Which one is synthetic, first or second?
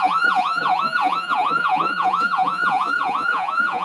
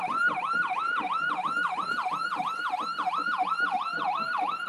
first